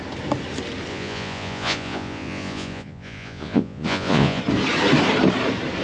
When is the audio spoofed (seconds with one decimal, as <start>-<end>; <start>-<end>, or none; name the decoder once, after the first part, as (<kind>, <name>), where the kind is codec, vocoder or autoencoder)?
0.9-4.4 (vocoder, Vocos)

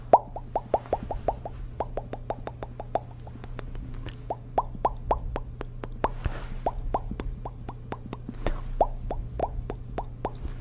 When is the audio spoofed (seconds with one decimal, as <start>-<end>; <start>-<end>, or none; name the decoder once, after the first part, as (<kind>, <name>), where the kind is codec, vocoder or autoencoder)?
none

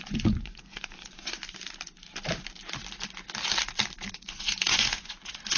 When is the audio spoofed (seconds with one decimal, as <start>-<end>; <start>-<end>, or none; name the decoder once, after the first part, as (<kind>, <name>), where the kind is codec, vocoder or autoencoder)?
0.0-1.4 (vocoder, Vocos); 4.1-5.6

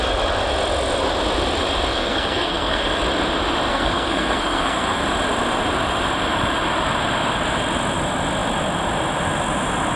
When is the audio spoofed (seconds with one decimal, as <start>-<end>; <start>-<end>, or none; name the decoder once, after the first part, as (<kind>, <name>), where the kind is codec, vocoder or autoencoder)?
1.9-3.0 (codec, SNAC); 3.7-5.0

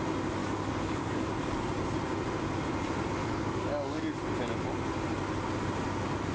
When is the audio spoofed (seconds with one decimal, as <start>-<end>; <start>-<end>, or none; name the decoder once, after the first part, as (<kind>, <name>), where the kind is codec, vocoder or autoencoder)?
0.4-1.2 (codec, DAC); 3.2-4.0

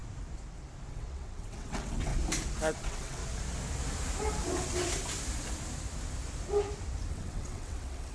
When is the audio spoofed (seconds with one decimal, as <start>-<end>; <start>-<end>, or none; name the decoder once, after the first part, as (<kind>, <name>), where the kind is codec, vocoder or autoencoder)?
0.9-2.1 (vocoder, WaveNeXt); 2.8-3.2; 7.1-8.1

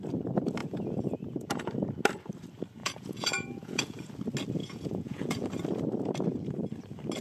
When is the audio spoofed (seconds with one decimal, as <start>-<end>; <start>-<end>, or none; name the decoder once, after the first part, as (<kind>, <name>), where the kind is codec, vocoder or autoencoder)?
0.6-1.7 (vocoder, Vocos); 2.8-4.1; 4.6-5.5